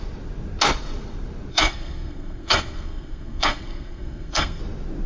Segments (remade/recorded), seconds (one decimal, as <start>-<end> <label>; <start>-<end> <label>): 0.0-1.5 recorded; 1.5-4.6 remade; 4.6-5.1 recorded